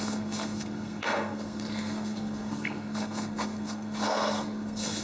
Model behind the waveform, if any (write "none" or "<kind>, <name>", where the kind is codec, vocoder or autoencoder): codec, SNAC